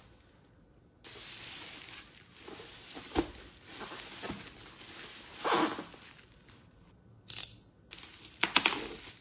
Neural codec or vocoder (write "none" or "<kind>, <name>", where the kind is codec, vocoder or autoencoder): none